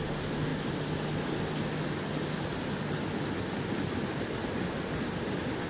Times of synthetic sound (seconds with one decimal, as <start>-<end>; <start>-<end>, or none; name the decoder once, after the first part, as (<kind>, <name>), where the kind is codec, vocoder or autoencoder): none